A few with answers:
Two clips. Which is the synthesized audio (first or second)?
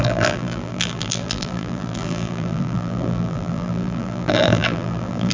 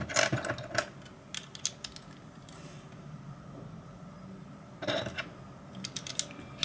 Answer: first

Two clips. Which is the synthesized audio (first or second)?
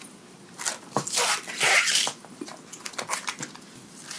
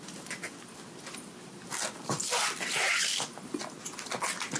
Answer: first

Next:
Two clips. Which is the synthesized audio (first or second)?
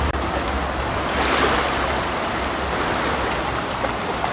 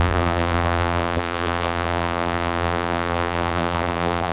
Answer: second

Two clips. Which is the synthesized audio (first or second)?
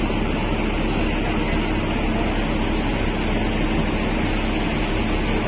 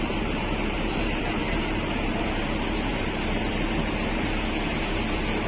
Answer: second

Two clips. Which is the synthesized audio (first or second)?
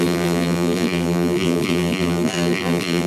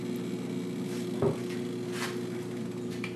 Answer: first